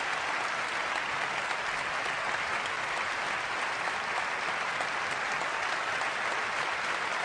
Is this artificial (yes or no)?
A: no